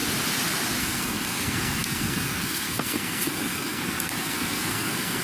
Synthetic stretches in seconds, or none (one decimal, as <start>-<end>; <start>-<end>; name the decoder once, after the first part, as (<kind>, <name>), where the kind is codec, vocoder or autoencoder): 0.8-5.2 (codec, SNAC)